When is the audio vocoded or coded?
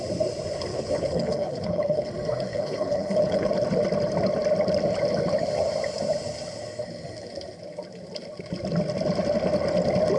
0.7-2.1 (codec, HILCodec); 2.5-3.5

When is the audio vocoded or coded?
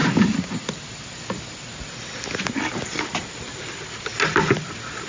none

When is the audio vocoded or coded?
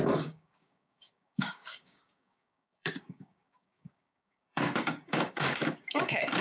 0.0-6.4 (codec, DAC)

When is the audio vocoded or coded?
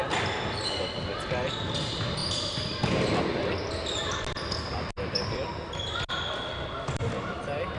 2.2-3.2 (vocoder, BigVGAN v2)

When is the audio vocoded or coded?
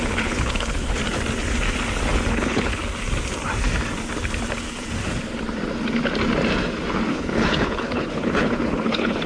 0.0-1.0 (codec, HILCodec); 2.3-2.8; 7.1-9.3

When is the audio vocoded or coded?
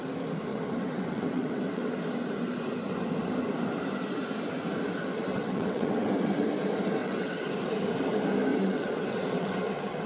0.5-1.9 (vocoder, WaveNeXt); 5.3-6.2; 7.0-7.5; 8.5-10.1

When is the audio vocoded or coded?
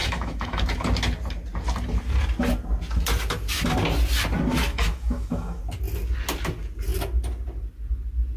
0.0-0.6 (autoencoder, DAC-VAE); 4.7-5.6